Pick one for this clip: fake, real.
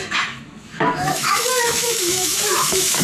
fake